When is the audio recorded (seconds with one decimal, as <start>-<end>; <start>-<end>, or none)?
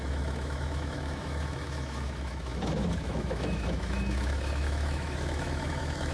none